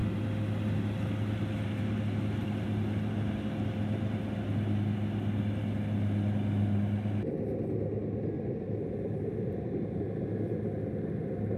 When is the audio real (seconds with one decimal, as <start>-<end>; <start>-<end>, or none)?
0.0-11.6